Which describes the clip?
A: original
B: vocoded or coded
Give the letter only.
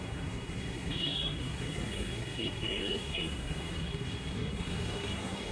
B